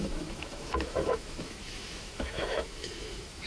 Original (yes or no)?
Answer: no